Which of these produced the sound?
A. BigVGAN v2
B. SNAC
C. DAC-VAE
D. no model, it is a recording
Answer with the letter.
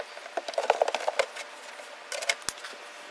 D